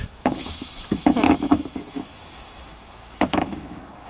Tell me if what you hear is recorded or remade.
remade